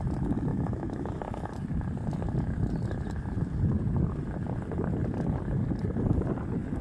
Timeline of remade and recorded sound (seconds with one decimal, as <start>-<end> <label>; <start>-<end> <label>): 0.0-0.5 recorded; 0.5-1.2 remade; 1.2-6.8 recorded

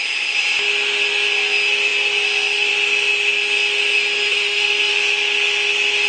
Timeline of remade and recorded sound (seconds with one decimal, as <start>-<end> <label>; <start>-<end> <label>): 0.0-4.2 recorded; 4.2-4.9 remade; 4.9-6.1 recorded